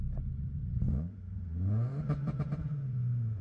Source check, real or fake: fake